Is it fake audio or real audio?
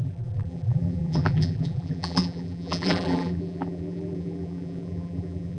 fake